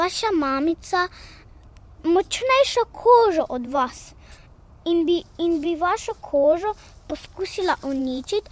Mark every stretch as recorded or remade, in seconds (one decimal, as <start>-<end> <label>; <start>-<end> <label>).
0.0-0.7 remade; 0.7-3.4 recorded; 3.4-7.1 remade; 7.1-8.0 recorded; 8.0-8.5 remade